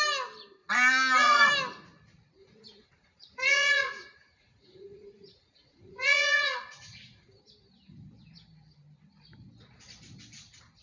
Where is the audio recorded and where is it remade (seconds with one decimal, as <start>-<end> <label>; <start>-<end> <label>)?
0.0-0.6 recorded; 0.6-1.5 remade; 1.5-2.4 recorded; 2.4-7.4 remade; 7.4-10.8 recorded